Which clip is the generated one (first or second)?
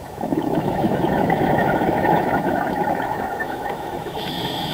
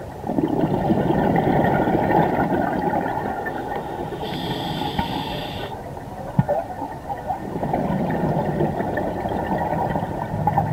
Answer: first